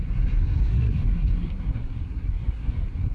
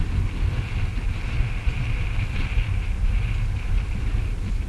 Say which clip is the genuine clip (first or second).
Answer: second